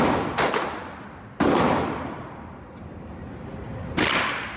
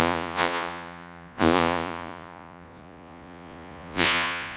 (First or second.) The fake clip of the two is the second